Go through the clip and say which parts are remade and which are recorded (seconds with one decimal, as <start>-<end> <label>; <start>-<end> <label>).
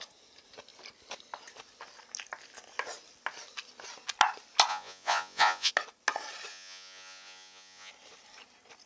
0.0-4.7 recorded; 4.7-5.7 remade; 5.7-6.5 recorded; 6.5-7.9 remade; 7.9-8.9 recorded